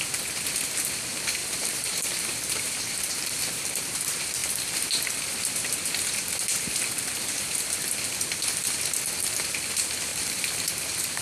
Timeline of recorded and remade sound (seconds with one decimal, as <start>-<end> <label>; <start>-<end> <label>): 0.0-1.4 recorded; 1.4-3.7 remade; 3.7-10.1 recorded; 10.1-11.2 remade